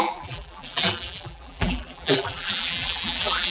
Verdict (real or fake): fake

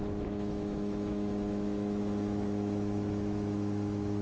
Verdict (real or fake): fake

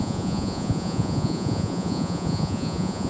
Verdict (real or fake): fake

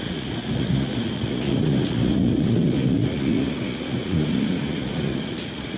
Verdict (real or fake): fake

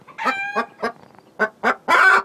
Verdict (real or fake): real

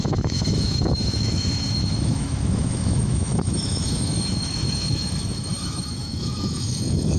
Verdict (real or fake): fake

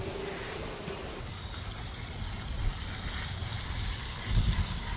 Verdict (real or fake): real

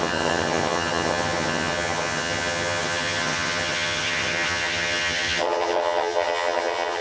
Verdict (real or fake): fake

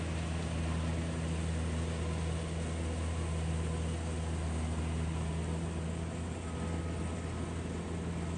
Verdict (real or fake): real